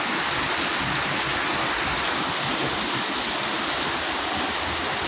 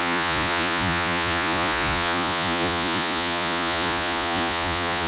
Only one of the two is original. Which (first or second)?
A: first